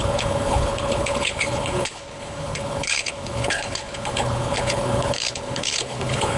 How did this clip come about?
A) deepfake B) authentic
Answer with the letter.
A